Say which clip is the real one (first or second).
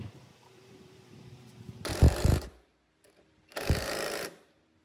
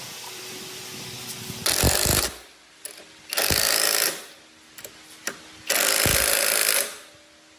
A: second